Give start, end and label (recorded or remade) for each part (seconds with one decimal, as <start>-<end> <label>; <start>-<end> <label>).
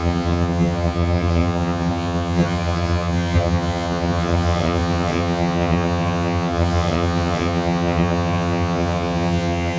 0.0-9.8 remade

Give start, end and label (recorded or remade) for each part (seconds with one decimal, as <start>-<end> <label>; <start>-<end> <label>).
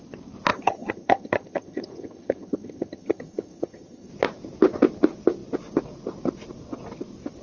0.0-0.5 recorded; 0.5-4.1 remade; 4.1-7.4 recorded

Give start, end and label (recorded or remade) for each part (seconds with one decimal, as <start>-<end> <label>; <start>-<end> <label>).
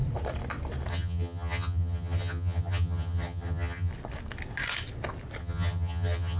0.0-0.9 recorded; 0.9-3.9 remade; 3.9-5.4 recorded; 5.4-6.4 remade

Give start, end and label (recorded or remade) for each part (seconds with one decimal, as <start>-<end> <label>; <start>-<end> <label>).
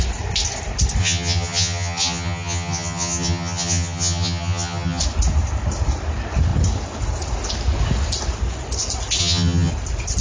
0.0-1.0 recorded; 1.0-5.0 remade; 5.0-9.2 recorded; 9.2-9.7 remade; 9.7-10.2 recorded